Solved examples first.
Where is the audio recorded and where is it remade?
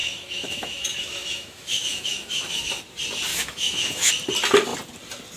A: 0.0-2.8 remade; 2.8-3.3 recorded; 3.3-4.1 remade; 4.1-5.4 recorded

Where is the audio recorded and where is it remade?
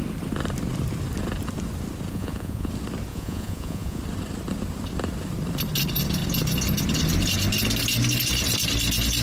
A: 0.0-2.1 recorded; 2.1-2.7 remade; 2.7-3.1 recorded; 3.1-4.0 remade; 4.0-9.2 recorded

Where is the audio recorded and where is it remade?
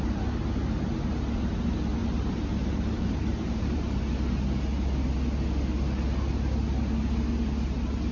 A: 0.0-2.0 recorded; 2.0-3.8 remade; 3.8-8.1 recorded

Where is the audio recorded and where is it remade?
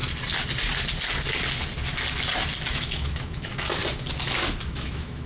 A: 0.0-2.7 recorded; 2.7-3.8 remade; 3.8-4.6 recorded; 4.6-5.3 remade